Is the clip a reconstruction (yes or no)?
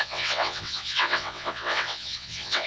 yes